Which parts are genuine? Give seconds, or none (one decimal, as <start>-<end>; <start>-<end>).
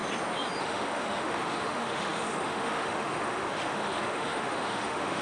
0.0-0.6